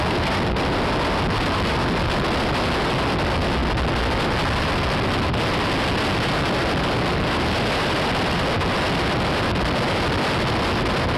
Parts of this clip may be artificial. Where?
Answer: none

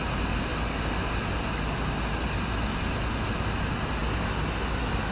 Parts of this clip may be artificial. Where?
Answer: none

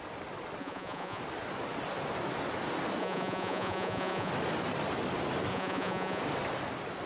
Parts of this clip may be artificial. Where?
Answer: 0.6-1.2 (vocoder, Vocos); 3.0-4.3; 5.5-6.2